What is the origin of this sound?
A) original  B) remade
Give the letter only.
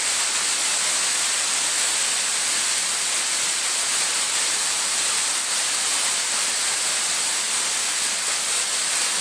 A